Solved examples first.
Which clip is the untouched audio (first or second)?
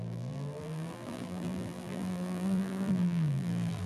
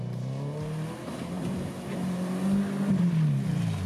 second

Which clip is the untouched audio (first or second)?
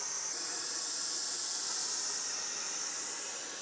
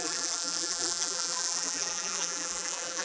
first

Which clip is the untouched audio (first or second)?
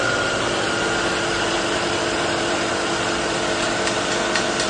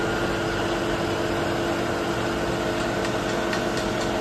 second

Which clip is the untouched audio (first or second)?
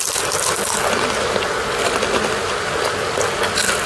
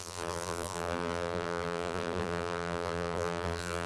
first